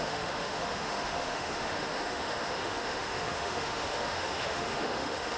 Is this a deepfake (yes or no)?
yes